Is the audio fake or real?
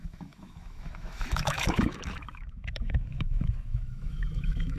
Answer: fake